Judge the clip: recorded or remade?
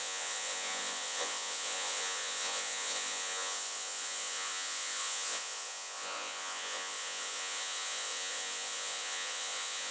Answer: remade